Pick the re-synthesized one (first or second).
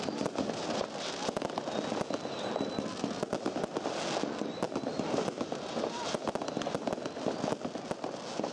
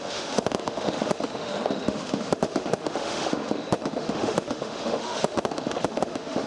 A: second